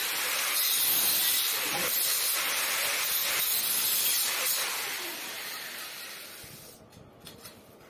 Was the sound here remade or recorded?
recorded